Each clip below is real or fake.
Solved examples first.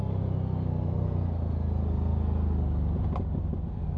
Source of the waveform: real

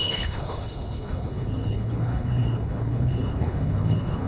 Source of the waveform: fake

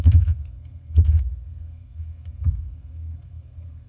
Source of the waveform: fake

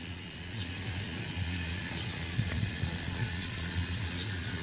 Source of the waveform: fake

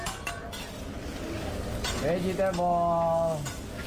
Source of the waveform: real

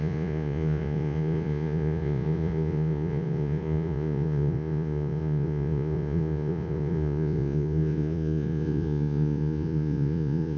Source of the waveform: fake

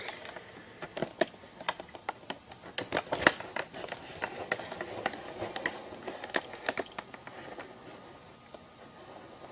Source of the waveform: real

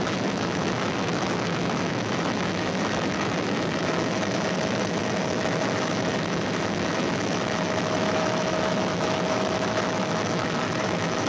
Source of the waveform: fake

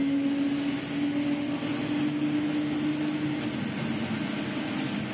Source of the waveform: real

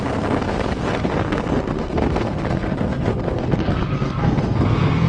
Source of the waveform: fake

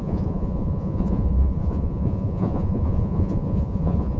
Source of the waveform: fake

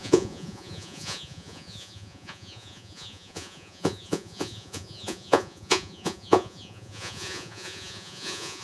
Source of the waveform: fake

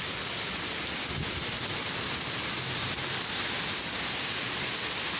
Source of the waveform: real